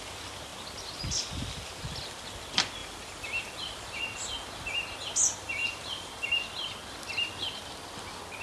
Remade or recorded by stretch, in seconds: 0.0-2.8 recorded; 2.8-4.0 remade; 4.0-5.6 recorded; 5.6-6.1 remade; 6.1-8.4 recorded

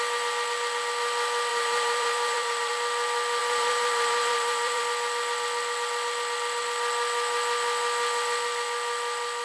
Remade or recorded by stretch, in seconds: 0.0-1.5 recorded; 1.5-2.7 remade; 2.7-3.4 recorded; 3.4-4.8 remade; 4.8-9.4 recorded

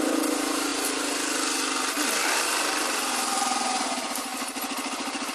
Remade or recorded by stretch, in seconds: 0.0-0.7 remade; 0.7-3.1 recorded; 3.1-4.3 remade; 4.3-5.3 recorded